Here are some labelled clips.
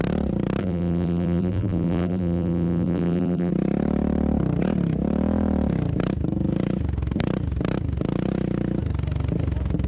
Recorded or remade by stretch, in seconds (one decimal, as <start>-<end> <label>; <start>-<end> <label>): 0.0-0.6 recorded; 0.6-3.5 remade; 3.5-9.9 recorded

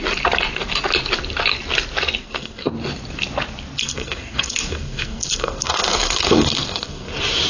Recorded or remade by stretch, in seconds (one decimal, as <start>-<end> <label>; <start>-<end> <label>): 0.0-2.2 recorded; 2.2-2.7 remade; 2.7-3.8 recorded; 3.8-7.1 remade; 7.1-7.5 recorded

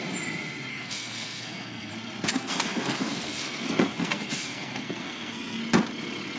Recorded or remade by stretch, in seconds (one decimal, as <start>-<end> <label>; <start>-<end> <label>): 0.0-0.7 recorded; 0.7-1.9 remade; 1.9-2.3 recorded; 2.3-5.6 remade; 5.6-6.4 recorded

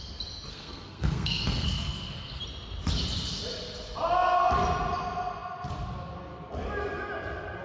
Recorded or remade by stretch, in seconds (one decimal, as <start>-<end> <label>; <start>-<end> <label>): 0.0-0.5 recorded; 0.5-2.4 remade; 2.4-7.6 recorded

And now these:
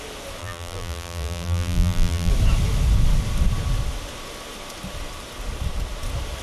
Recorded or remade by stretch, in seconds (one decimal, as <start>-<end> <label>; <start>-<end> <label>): 0.0-0.4 recorded; 0.4-2.3 remade; 2.3-6.4 recorded

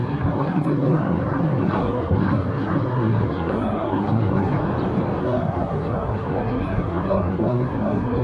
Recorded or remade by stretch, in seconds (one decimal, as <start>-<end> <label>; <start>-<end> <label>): 0.0-4.6 remade; 4.6-5.2 recorded; 5.2-8.2 remade

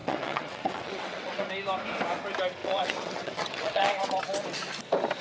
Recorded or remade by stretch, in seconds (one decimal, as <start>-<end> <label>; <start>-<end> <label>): 0.0-1.5 remade; 1.5-2.6 recorded; 2.6-4.2 remade; 4.2-5.2 recorded

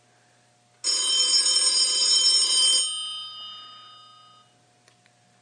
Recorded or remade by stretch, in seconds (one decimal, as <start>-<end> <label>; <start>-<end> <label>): 0.0-5.4 recorded